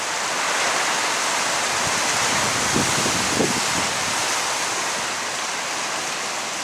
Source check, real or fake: real